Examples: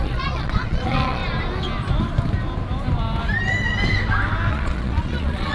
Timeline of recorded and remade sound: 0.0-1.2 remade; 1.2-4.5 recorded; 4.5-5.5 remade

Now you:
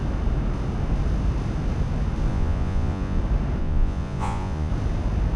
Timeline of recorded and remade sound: 0.0-2.3 recorded; 2.3-3.2 remade; 3.2-3.6 recorded; 3.6-4.7 remade; 4.7-5.4 recorded

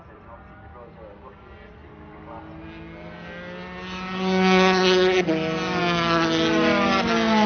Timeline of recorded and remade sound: 0.0-7.5 recorded

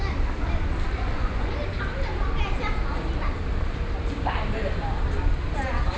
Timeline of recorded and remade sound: 0.0-1.0 recorded; 1.0-1.5 remade; 1.5-6.0 recorded

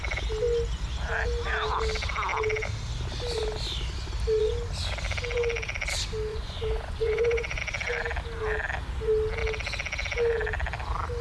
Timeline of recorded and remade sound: 0.0-6.3 recorded; 6.3-7.6 remade; 7.6-11.2 recorded

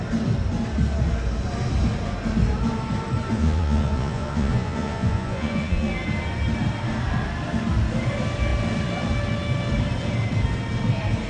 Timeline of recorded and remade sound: 0.0-3.3 recorded; 3.3-5.9 remade; 5.9-11.3 recorded

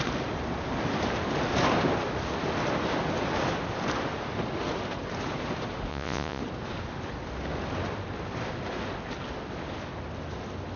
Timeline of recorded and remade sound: 0.0-5.9 recorded; 5.9-6.4 remade; 6.4-10.8 recorded